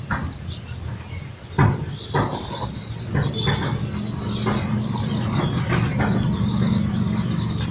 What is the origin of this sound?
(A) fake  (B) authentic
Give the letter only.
B